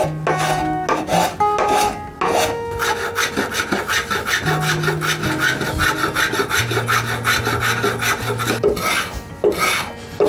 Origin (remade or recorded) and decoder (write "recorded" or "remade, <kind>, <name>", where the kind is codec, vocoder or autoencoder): recorded